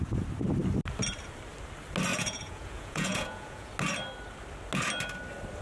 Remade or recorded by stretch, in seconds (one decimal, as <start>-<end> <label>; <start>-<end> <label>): 0.0-2.1 recorded; 2.1-3.7 remade; 3.7-5.6 recorded